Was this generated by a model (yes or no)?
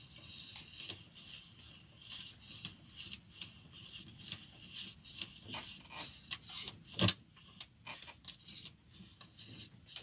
no